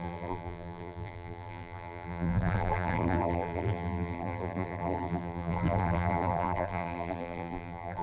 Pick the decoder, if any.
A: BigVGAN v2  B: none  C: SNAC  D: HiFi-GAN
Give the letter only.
A